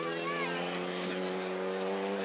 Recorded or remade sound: recorded